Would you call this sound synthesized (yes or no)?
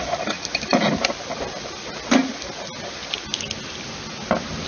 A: no